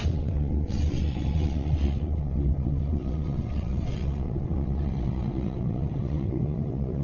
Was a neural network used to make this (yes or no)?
yes